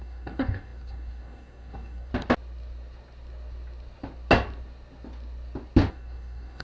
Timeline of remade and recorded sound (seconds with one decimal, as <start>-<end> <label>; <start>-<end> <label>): 0.0-2.1 remade; 2.1-5.9 recorded; 5.9-6.6 remade